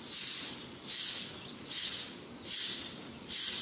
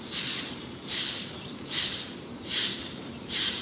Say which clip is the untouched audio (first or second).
first